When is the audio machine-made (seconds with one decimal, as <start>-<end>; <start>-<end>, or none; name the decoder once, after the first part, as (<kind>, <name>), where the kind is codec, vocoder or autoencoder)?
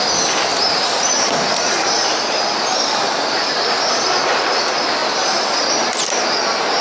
0.5-4.6 (vocoder, BigVGAN v2); 5.0-6.2